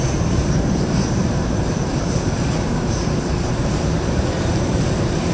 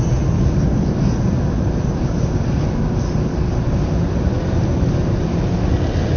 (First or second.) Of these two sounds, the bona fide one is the second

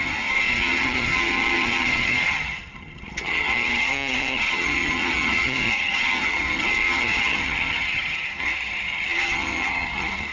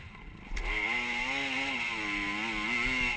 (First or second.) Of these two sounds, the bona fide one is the second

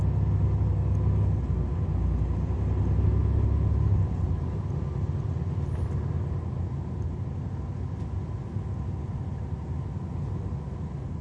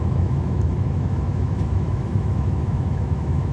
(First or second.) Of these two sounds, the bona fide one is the first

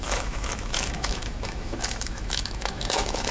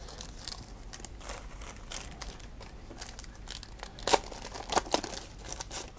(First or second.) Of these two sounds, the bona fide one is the second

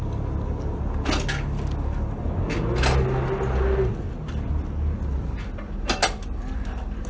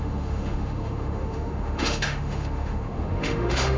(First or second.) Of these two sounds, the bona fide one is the first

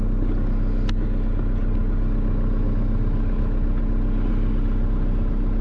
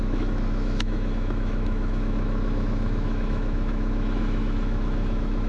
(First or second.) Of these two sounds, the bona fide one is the first